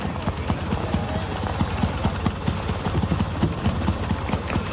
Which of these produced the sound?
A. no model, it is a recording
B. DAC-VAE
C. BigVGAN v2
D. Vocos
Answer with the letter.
A